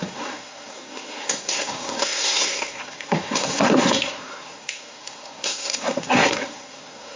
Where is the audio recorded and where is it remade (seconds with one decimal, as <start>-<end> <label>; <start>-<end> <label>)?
0.0-7.2 remade